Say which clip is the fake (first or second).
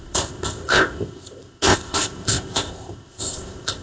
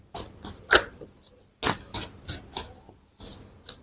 first